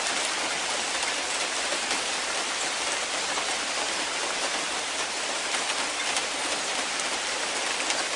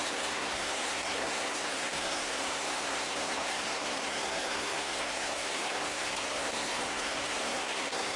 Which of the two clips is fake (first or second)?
second